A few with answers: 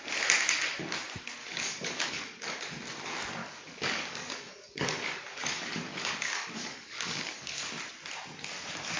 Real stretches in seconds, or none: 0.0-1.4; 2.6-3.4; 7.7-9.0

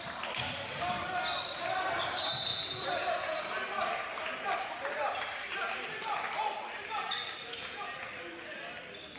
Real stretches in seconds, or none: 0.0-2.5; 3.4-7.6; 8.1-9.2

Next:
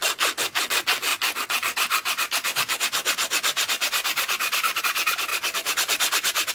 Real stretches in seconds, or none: 0.0-6.5

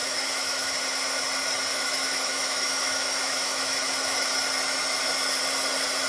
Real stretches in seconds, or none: 0.8-1.7; 4.3-6.1

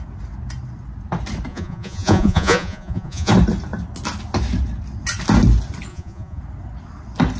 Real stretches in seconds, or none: 0.0-1.5; 3.3-5.9; 6.4-7.4